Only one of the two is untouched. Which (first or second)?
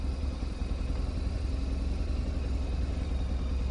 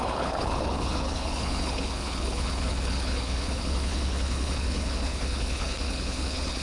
first